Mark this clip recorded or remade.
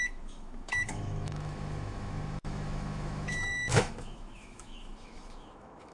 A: remade